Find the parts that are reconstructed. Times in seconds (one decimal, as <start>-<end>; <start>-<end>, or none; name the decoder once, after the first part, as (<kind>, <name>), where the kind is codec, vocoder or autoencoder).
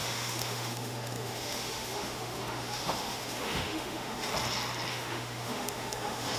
0.0-4.3 (autoencoder, DAC-VAE); 4.9-6.4